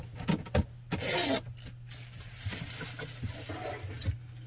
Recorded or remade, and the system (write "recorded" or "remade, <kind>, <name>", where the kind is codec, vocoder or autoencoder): recorded